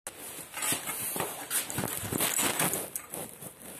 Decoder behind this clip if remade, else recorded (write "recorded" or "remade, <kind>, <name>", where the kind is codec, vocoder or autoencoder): recorded